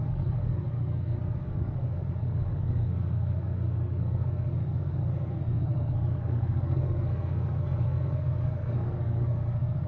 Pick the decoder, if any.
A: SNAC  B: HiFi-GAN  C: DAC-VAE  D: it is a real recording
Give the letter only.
A